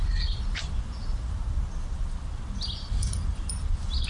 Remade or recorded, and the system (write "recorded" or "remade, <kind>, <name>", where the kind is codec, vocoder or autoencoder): remade, vocoder, BigVGAN v2